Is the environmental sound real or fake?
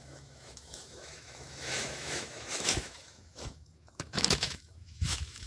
fake